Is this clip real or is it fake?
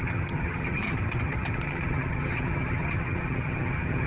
fake